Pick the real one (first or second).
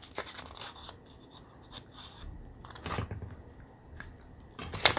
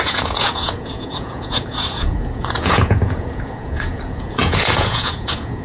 first